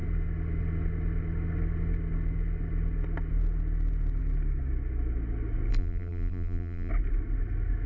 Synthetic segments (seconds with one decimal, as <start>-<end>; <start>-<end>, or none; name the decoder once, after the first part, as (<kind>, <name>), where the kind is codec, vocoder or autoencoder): 5.7-6.9 (vocoder, BigVGAN v2)